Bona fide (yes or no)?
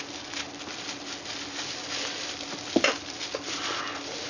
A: yes